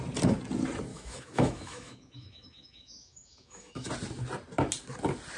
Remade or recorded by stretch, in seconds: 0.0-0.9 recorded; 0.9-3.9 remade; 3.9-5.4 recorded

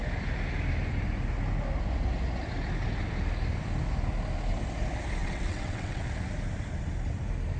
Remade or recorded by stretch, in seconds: 0.0-5.2 recorded; 5.2-6.0 remade; 6.0-7.6 recorded

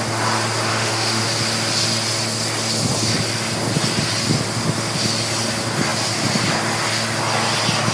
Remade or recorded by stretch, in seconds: 0.0-0.7 recorded; 0.7-1.3 remade; 1.3-7.9 recorded

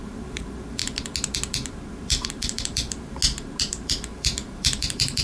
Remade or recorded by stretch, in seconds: 0.0-0.8 remade; 0.8-1.9 recorded; 1.9-3.2 remade; 3.2-3.7 recorded; 3.7-5.2 remade

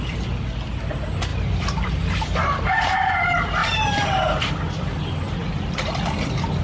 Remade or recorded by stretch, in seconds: 0.0-1.3 recorded; 1.3-3.1 remade; 3.1-3.6 recorded; 3.6-4.5 remade; 4.5-6.6 recorded

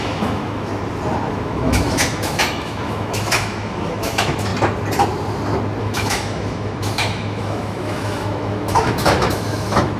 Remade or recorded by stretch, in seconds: 0.0-0.7 remade; 0.7-1.3 recorded; 1.3-4.5 remade; 4.5-5.8 recorded; 5.8-10.0 remade